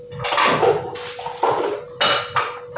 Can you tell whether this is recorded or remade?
recorded